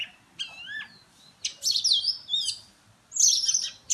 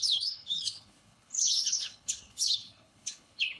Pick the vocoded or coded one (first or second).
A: second